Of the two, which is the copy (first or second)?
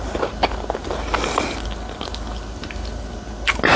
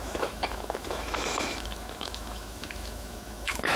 second